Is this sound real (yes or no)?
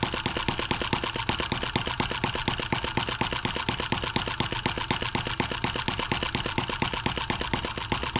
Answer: yes